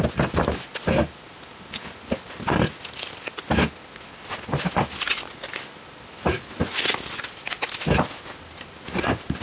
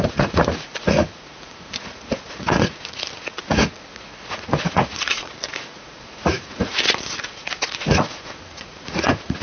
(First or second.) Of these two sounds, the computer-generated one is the second